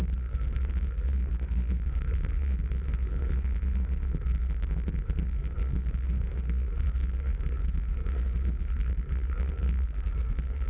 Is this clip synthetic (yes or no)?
yes